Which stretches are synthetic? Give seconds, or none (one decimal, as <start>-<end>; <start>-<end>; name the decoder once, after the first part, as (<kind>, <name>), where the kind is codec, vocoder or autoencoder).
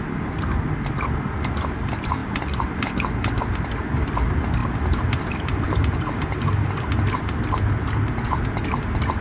2.2-3.4 (vocoder, BigVGAN v2); 4.6-6.9